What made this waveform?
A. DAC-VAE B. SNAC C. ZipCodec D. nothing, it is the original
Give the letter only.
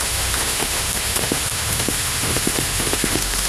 A